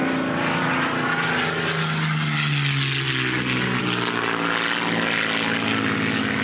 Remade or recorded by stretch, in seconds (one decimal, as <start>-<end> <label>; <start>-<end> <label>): 0.0-6.4 recorded